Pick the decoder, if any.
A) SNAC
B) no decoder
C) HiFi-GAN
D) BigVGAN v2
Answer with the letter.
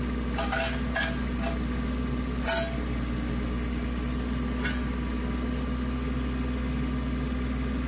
B